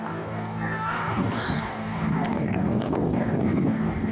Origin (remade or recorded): remade